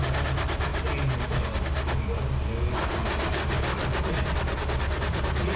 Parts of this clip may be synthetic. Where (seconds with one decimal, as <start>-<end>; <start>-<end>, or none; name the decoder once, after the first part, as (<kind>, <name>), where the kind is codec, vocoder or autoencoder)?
none